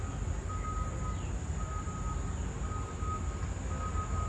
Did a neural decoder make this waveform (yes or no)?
no